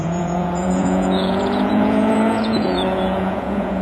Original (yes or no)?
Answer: no